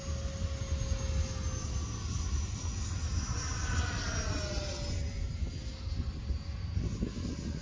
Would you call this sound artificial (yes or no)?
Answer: no